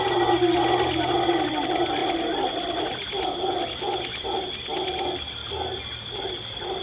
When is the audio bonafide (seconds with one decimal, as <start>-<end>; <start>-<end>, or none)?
0.0-6.8